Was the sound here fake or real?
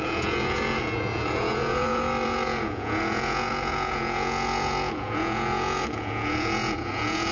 fake